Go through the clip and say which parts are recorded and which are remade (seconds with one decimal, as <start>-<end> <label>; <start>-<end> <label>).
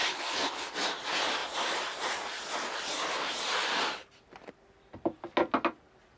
0.0-0.7 remade; 0.7-6.2 recorded